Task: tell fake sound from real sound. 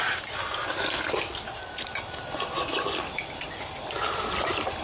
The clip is real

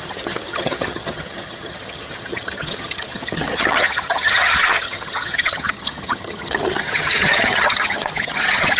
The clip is fake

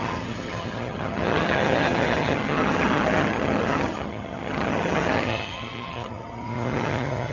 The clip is fake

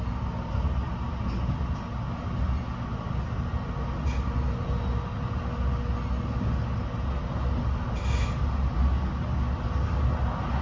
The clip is real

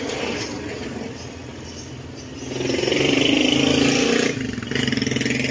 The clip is real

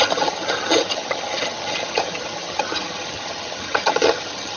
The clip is fake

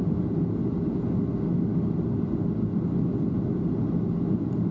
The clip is real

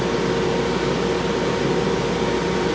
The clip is real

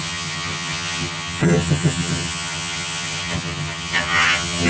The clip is fake